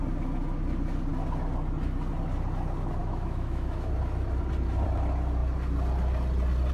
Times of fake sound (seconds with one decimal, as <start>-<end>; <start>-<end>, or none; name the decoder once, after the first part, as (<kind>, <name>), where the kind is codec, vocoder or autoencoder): 3.0-3.9 (autoencoder, DAC-VAE)